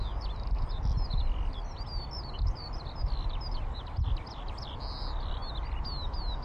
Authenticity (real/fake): real